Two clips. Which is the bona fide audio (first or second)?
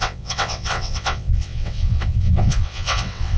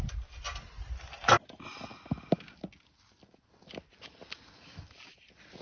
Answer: second